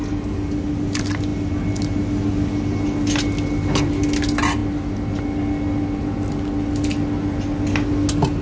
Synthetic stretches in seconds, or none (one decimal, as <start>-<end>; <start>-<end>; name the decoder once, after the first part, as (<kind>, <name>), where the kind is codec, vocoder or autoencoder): none